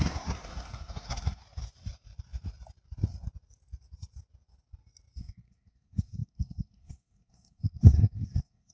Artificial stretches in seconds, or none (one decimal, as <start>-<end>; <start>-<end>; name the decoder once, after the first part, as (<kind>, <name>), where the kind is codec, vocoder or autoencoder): 0.0-1.4 (codec, SNAC); 5.2-8.7